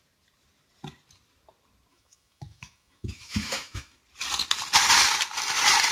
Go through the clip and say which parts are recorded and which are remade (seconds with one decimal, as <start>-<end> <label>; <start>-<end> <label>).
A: 0.0-1.9 recorded; 1.9-4.0 remade; 4.0-5.9 recorded